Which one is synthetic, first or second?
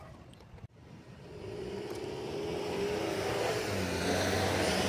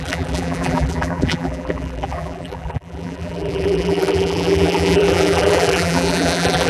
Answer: second